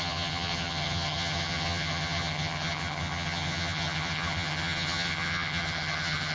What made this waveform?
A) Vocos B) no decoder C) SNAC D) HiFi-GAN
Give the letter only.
D